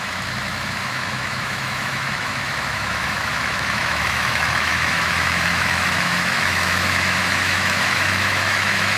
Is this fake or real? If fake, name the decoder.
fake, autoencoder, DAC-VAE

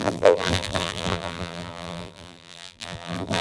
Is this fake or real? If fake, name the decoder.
fake, vocoder, BigVGAN v2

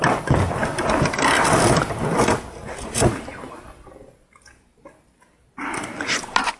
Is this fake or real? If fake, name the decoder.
real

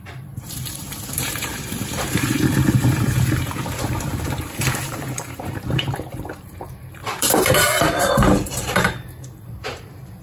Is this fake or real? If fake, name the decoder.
fake, vocoder, BigVGAN v2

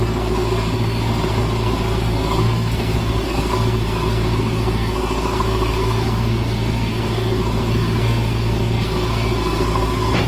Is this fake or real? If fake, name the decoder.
fake, codec, SNAC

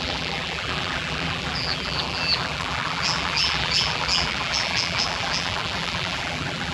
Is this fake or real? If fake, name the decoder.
fake, vocoder, BigVGAN v2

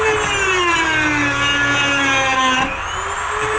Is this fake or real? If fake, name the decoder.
real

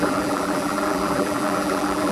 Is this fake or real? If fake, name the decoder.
fake, vocoder, BigVGAN v2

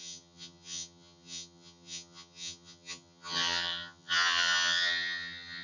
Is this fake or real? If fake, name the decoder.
fake, vocoder, HiFi-GAN